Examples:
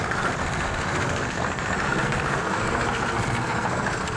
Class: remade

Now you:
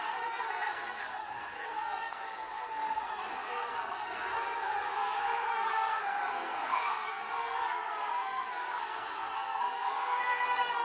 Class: remade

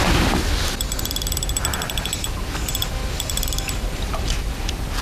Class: remade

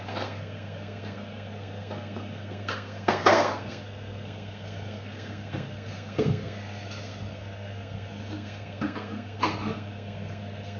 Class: remade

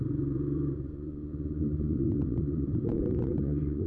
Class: remade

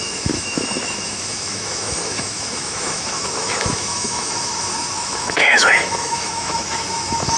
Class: remade